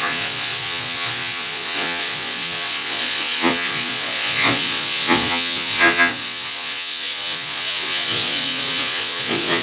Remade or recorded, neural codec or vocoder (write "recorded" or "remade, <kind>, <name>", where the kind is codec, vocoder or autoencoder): remade, vocoder, Vocos